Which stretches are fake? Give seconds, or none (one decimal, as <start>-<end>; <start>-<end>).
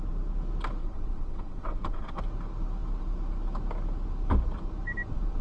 0.8-2.2